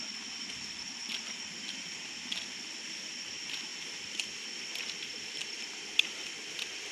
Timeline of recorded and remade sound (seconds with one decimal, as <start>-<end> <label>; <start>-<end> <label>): 0.0-6.9 recorded